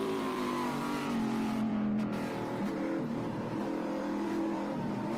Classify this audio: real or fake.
fake